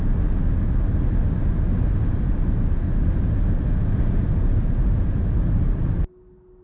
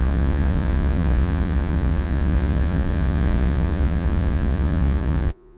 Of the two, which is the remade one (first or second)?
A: second